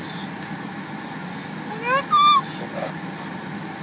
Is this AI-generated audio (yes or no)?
no